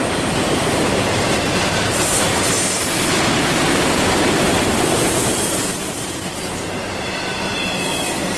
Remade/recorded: remade